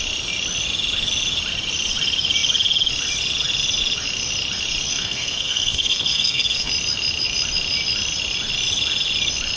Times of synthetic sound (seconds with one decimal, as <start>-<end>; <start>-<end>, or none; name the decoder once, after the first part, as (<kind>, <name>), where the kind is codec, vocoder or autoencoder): 4.9-6.7 (codec, SNAC)